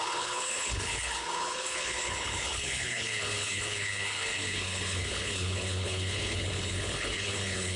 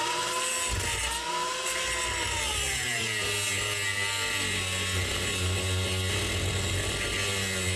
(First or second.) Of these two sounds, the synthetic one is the first